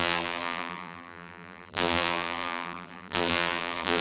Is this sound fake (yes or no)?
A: yes